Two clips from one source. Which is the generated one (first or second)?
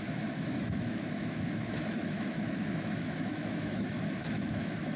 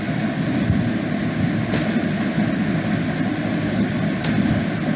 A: first